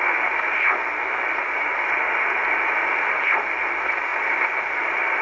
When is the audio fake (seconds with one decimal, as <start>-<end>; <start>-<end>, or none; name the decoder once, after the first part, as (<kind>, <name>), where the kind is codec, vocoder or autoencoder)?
none